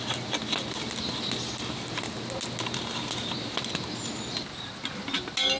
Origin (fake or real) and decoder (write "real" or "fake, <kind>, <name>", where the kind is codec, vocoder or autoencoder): real